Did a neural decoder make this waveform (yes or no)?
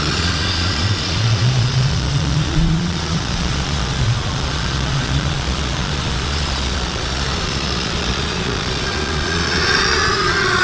yes